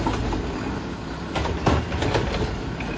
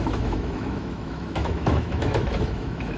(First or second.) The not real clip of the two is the second